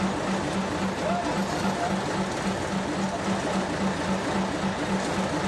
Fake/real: real